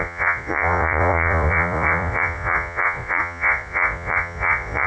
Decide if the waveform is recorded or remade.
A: remade